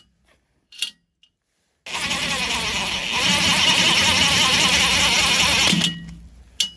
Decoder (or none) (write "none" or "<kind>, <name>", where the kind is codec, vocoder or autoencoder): none